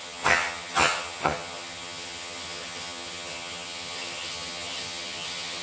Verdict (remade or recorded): remade